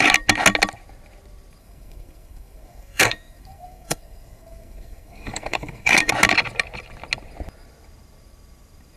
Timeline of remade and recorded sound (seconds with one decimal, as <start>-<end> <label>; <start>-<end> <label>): 0.0-1.6 recorded; 1.6-6.1 remade; 6.1-9.0 recorded